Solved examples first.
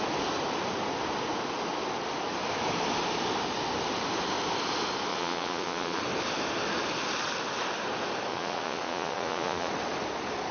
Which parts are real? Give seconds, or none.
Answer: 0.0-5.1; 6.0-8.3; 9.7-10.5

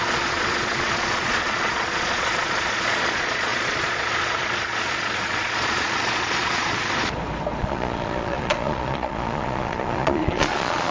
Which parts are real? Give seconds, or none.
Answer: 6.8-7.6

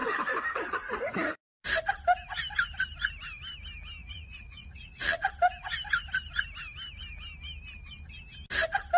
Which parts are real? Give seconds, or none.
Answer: 1.4-4.0; 5.3-9.0

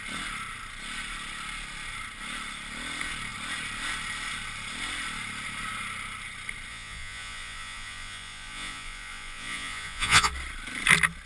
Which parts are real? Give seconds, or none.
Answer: 0.0-6.7; 10.3-11.3